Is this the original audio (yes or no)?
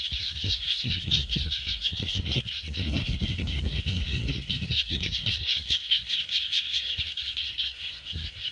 no